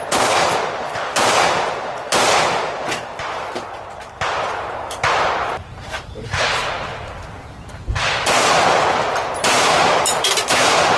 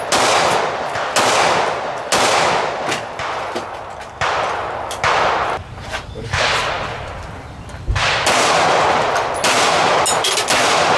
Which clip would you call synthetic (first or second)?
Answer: first